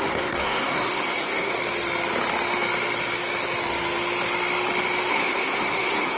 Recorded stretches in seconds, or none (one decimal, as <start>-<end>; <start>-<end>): 1.6-5.1